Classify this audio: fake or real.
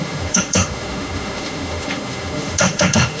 fake